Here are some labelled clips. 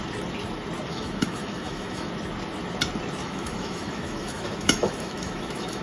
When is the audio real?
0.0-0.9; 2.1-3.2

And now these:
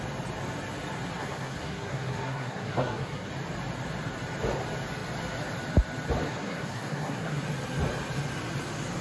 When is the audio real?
0.0-1.2; 3.3-6.3; 7.4-9.0

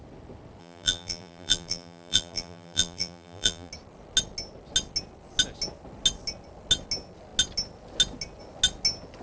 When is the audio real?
0.0-0.6; 3.7-9.2

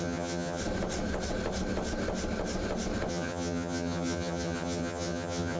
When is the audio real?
0.6-3.1